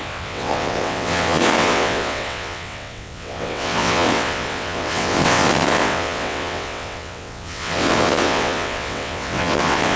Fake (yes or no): yes